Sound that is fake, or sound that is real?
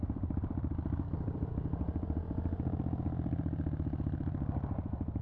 real